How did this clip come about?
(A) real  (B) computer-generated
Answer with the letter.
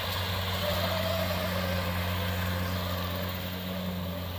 A